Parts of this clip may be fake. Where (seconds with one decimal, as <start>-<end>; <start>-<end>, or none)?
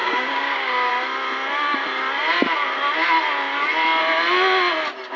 0.0-0.9